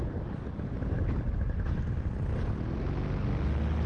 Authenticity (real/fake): real